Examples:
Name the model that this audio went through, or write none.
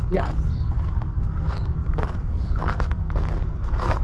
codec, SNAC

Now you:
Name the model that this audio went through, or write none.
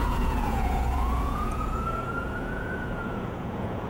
vocoder, Vocos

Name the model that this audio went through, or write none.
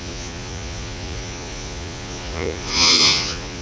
vocoder, Vocos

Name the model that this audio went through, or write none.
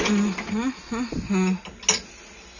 none